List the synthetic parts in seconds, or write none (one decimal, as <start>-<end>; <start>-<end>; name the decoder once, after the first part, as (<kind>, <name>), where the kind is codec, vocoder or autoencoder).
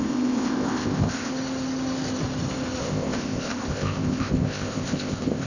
0.0-1.3 (codec, ZipCodec); 2.8-5.5